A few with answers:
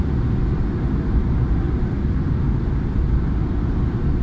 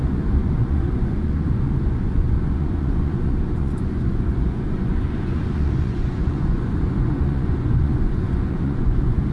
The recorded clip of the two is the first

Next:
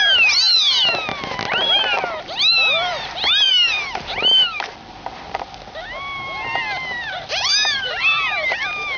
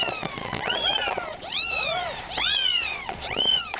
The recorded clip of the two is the first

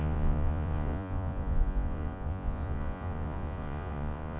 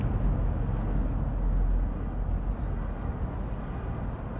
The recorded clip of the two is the second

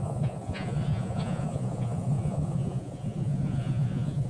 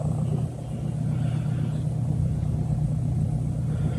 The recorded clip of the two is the second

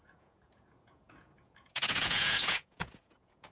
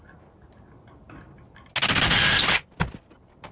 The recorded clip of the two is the second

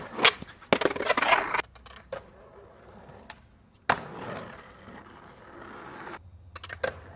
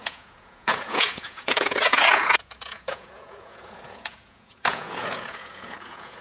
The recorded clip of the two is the first